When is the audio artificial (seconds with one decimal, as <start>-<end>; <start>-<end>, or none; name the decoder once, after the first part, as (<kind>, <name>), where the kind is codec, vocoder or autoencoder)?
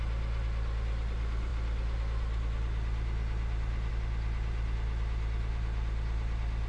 none